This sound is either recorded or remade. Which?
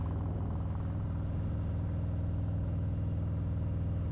recorded